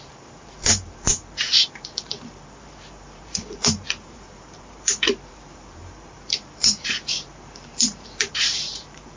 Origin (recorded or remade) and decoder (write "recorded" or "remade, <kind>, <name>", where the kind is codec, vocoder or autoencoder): remade, vocoder, BigVGAN v2